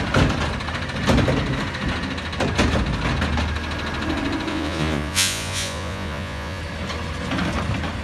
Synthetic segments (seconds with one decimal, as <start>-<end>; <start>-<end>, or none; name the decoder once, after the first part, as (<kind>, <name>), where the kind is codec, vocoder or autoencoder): 4.5-6.6 (vocoder, Vocos)